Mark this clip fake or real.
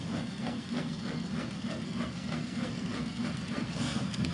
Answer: fake